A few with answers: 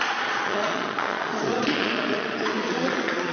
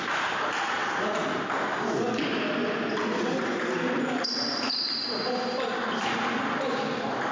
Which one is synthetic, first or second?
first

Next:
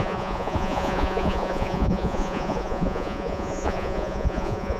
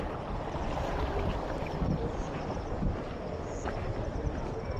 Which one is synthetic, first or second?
first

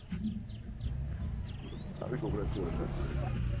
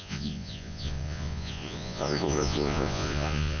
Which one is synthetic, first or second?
second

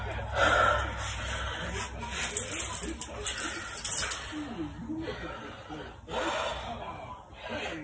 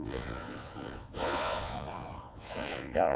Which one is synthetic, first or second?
second